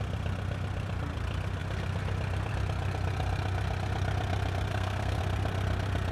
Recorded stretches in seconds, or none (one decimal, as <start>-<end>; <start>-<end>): 0.0-4.7; 5.2-6.1